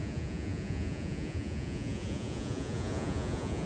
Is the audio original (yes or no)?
no